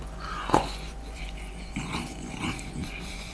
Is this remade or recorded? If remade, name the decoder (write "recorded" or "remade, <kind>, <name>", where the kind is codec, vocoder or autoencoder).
remade, vocoder, Vocos